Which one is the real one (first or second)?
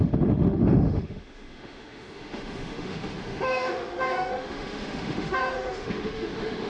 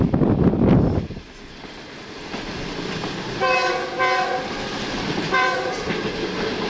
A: second